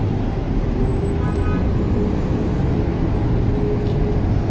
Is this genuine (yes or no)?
yes